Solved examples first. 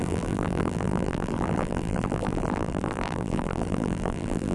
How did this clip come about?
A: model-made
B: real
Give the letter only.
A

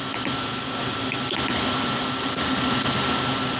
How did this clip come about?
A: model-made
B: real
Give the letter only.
B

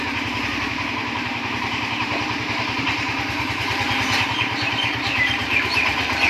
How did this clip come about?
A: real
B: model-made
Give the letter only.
B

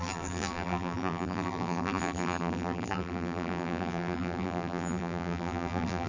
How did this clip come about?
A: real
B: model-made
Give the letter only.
B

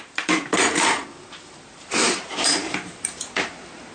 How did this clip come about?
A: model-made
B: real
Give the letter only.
A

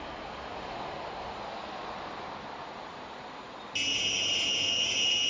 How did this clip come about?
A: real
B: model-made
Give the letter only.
A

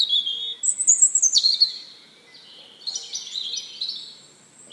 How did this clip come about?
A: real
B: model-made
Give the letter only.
A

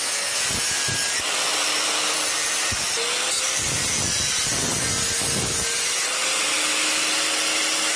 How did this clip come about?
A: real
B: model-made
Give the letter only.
A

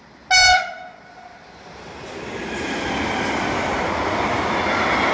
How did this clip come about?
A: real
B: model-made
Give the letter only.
A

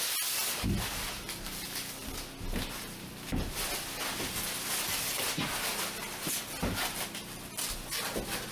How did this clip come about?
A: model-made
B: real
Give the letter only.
B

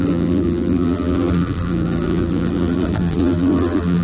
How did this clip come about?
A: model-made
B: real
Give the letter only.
A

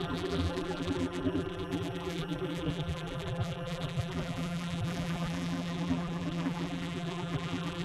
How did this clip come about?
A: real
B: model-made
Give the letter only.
B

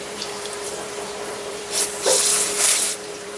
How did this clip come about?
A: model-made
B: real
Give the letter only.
A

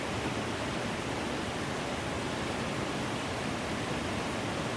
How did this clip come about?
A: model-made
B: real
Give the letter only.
B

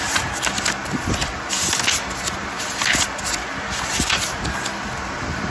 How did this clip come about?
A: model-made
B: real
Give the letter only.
B